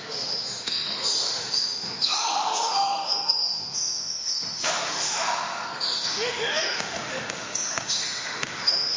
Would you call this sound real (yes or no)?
no